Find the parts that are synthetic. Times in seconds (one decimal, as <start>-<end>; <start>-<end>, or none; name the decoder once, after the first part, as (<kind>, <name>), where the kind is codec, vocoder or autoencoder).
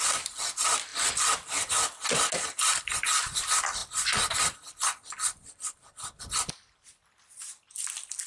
none